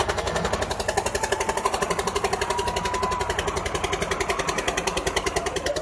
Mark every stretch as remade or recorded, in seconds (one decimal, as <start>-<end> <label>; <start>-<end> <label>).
0.0-0.5 remade; 0.5-5.8 recorded